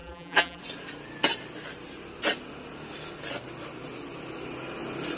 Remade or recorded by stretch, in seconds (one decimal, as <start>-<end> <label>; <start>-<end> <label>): 0.0-0.6 remade; 0.6-5.2 recorded